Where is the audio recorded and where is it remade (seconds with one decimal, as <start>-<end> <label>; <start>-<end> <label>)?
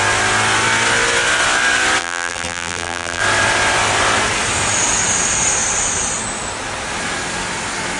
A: 0.0-2.0 recorded; 2.0-3.2 remade; 3.2-8.0 recorded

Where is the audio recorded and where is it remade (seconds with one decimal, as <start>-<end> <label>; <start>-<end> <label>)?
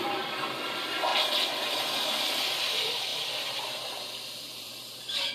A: 0.0-1.1 remade; 1.1-2.4 recorded; 2.4-3.1 remade; 3.1-4.4 recorded; 4.4-5.3 remade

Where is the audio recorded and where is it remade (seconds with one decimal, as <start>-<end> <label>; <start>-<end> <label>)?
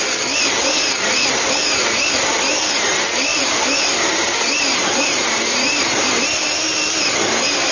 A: 0.0-3.3 recorded; 3.3-6.1 remade; 6.1-7.7 recorded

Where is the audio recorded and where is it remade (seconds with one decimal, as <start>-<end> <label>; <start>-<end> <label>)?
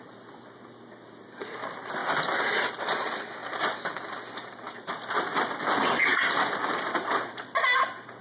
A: 0.0-2.0 remade; 2.0-2.8 recorded; 2.8-3.4 remade; 3.4-4.3 recorded; 4.3-6.1 remade; 6.1-6.7 recorded; 6.7-8.2 remade